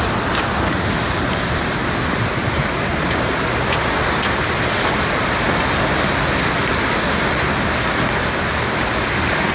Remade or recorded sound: recorded